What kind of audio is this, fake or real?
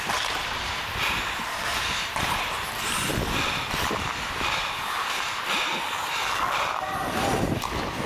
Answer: fake